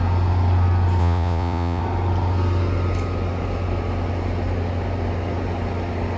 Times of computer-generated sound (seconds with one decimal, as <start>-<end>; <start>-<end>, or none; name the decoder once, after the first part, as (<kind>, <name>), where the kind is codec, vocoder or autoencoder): 1.0-1.8 (vocoder, Vocos)